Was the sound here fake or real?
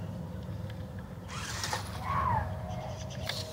real